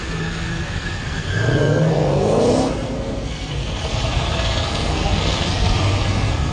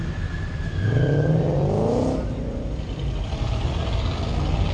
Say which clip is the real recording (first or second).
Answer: second